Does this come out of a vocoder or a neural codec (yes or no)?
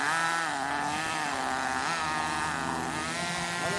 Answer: no